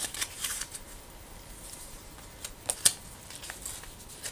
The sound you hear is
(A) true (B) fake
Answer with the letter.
A